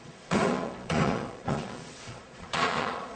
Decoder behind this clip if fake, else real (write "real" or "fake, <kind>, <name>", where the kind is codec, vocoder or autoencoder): fake, vocoder, Vocos